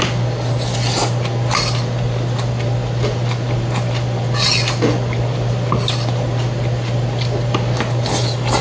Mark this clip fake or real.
real